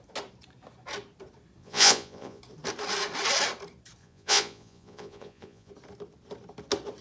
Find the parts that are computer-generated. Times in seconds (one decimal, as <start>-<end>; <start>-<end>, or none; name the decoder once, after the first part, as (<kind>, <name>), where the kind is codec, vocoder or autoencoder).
1.6-2.4 (vocoder, Vocos); 4.0-5.7